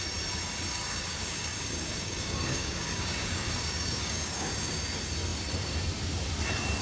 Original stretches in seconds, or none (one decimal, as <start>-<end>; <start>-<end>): 0.0-0.7; 4.8-6.8